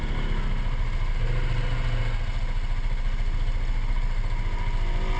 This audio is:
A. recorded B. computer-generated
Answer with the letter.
A